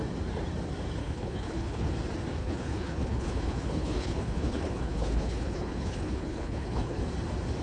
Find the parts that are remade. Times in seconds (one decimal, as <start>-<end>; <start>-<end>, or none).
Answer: 1.0-1.9; 2.4-7.0